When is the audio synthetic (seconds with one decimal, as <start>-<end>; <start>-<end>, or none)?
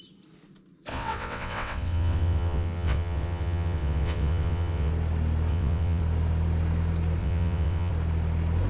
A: 0.9-4.9; 5.5-6.0; 7.2-7.9